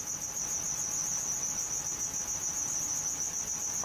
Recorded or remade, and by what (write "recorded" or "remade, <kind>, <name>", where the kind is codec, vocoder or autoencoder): recorded